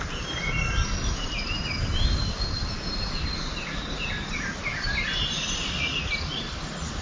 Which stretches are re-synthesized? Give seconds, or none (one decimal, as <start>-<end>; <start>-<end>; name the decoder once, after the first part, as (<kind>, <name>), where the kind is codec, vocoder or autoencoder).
none